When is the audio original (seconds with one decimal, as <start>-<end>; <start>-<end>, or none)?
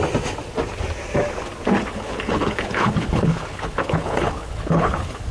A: 0.0-1.9